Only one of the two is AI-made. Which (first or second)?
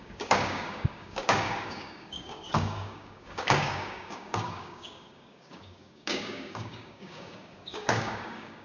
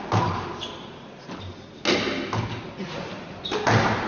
first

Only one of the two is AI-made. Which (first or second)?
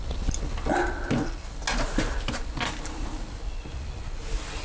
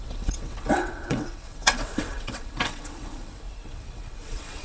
second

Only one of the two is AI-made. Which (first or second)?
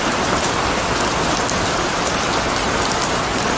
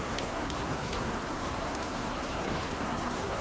second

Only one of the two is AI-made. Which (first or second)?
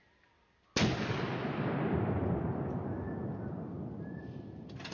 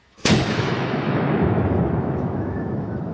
second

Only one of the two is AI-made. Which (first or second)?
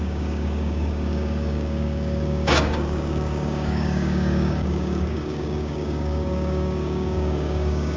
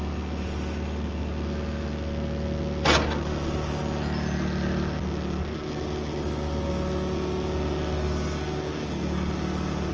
first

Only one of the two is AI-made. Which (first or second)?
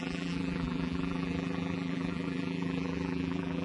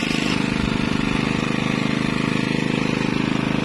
first